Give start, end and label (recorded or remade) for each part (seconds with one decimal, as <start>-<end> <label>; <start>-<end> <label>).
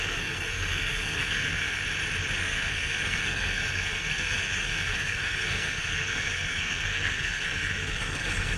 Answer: 0.0-1.8 remade; 1.8-2.4 recorded; 2.4-8.6 remade